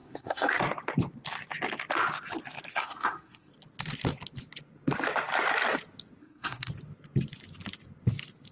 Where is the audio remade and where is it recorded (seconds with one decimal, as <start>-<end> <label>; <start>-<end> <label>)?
0.0-0.6 remade; 0.6-2.7 recorded; 2.7-3.5 remade; 3.5-6.2 recorded; 6.2-6.7 remade; 6.7-8.5 recorded